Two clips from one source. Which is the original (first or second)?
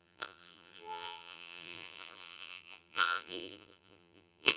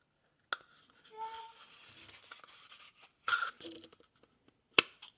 second